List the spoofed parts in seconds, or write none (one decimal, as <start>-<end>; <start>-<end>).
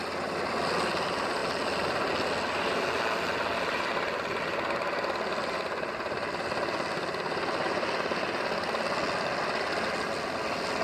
none